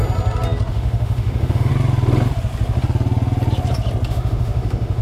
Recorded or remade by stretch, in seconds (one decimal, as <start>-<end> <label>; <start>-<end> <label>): 0.0-0.7 recorded; 0.7-1.7 remade; 1.7-4.1 recorded; 4.1-5.0 remade